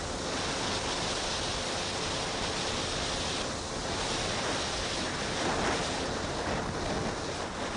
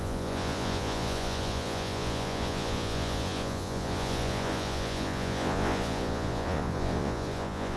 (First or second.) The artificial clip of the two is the second